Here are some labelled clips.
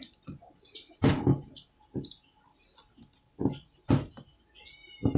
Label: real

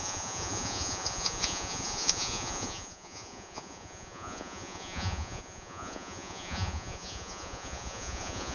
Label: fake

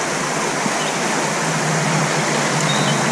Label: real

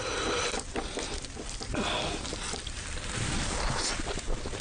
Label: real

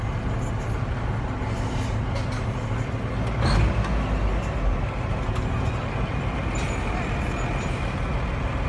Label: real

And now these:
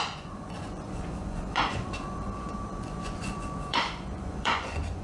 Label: fake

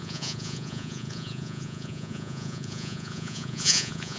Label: fake